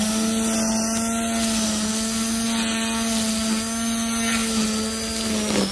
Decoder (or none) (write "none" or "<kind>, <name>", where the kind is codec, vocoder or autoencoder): none